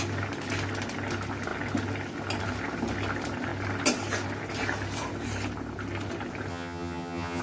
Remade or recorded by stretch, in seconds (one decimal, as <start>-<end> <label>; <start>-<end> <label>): 0.0-6.5 recorded; 6.5-7.4 remade